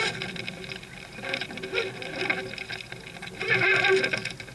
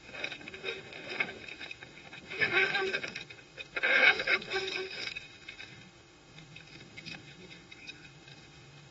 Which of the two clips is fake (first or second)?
second